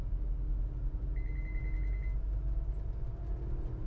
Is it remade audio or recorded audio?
recorded